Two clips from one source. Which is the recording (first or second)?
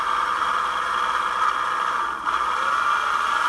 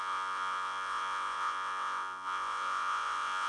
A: first